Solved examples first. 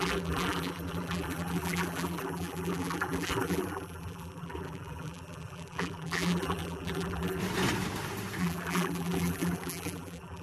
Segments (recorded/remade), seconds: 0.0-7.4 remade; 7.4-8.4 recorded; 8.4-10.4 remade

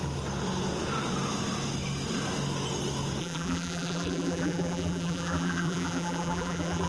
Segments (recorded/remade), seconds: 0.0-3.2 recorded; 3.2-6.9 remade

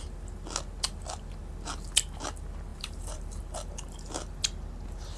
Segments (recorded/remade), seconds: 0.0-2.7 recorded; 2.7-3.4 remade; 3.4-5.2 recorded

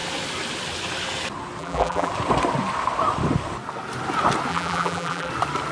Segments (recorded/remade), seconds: 0.0-1.6 recorded; 1.6-2.1 remade; 2.1-4.5 recorded; 4.5-5.3 remade; 5.3-5.7 recorded